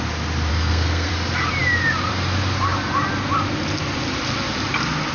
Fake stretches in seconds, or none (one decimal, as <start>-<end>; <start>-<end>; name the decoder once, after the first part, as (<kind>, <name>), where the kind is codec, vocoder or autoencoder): 0.5-1.1 (codec, SNAC)